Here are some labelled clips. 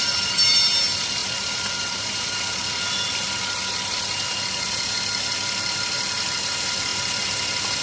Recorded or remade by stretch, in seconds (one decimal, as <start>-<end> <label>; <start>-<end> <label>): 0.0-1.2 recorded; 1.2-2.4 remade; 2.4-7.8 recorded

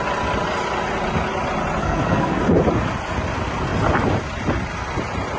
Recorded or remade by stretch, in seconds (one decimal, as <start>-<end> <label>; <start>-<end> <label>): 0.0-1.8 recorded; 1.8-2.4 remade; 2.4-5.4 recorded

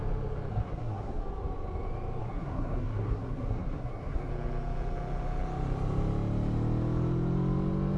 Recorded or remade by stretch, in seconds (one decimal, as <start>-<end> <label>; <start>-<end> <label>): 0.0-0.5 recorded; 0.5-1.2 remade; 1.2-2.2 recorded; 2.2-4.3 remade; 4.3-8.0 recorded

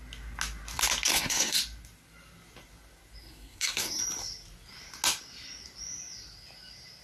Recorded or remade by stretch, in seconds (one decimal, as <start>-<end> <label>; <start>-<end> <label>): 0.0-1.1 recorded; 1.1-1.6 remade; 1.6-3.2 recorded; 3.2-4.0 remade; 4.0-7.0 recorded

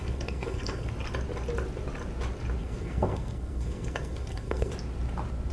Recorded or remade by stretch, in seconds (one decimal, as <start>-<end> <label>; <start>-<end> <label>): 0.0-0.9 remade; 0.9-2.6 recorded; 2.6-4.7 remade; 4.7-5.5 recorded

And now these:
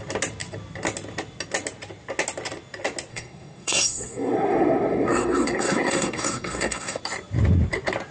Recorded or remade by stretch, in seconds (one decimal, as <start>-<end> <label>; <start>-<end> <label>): 0.0-3.1 recorded; 3.1-7.0 remade; 7.0-8.1 recorded

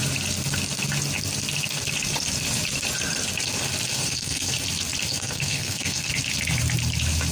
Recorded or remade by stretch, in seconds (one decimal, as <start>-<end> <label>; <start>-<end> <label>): 0.0-3.9 recorded; 3.9-4.5 remade; 4.5-5.1 recorded; 5.1-6.1 remade; 6.1-7.3 recorded